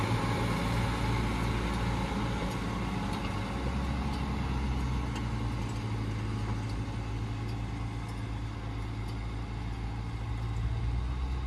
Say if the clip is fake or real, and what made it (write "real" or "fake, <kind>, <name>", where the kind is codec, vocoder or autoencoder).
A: real